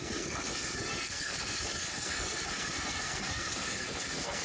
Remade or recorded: remade